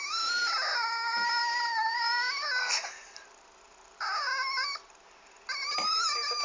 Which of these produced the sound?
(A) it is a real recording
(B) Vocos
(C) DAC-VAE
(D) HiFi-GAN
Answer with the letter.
A